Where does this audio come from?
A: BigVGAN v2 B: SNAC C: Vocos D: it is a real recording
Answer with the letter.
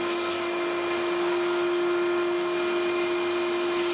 D